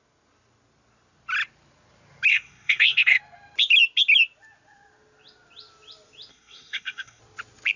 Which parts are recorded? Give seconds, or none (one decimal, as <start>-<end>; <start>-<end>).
0.0-2.3; 3.2-6.3; 7.2-7.8